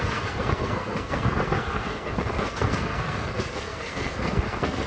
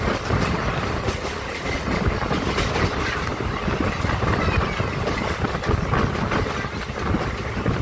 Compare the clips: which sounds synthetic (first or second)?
first